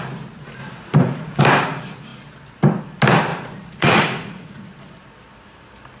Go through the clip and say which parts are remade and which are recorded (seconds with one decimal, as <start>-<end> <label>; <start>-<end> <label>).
0.0-0.6 recorded; 0.6-1.4 remade; 1.4-3.3 recorded; 3.3-4.6 remade; 4.6-6.0 recorded